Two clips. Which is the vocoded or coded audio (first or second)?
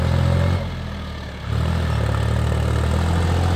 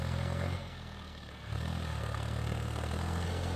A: second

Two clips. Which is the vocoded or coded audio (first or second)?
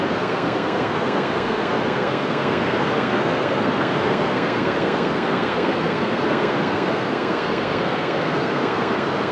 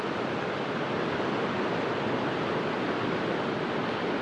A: first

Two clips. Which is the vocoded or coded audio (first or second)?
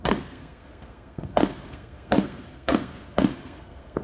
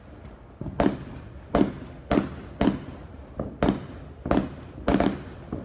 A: first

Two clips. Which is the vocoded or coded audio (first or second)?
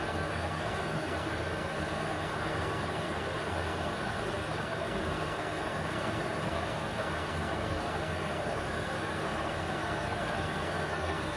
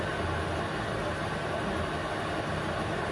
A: first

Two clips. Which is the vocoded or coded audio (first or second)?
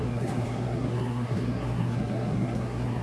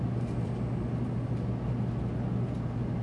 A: first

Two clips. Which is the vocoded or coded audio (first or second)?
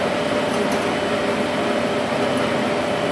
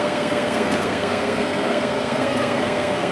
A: second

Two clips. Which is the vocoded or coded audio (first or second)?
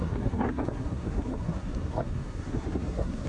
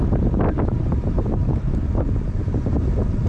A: first